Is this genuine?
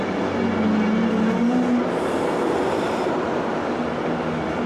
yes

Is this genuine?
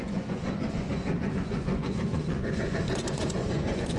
no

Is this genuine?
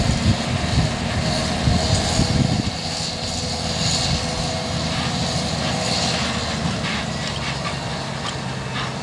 yes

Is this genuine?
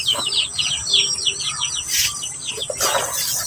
yes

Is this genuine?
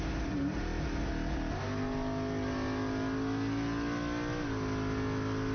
yes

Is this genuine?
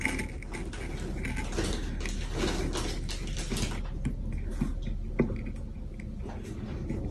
yes